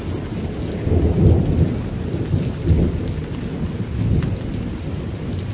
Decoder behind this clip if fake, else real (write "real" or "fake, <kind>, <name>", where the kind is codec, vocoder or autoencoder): real